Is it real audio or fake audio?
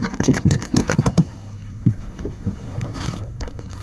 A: fake